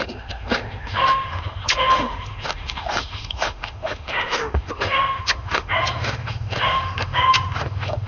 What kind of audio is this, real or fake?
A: fake